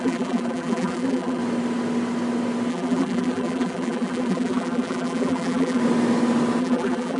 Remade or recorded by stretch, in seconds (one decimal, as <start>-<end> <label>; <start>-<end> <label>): 0.0-1.4 remade; 1.4-2.7 recorded; 2.7-5.8 remade; 5.8-6.6 recorded; 6.6-7.2 remade